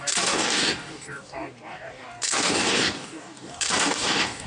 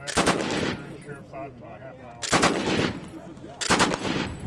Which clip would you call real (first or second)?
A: second